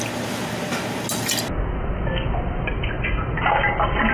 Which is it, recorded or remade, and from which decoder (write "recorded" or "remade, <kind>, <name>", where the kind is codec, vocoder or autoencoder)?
recorded